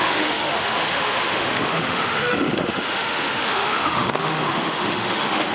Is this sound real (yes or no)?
no